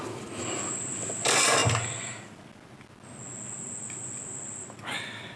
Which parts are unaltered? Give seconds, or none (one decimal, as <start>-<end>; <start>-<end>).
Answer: 0.0-5.4